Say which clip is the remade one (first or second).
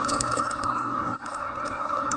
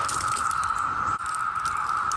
first